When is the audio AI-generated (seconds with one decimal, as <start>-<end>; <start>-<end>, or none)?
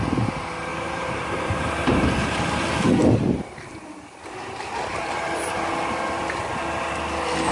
0.7-2.4